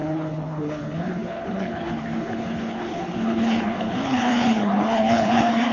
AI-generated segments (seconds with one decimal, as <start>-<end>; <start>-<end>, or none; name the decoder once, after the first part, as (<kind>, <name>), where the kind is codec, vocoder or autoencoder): 0.0-5.7 (codec, HILCodec)